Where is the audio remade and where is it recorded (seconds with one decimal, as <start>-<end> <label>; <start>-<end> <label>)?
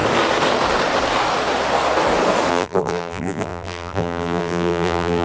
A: 0.0-2.5 recorded; 2.5-5.2 remade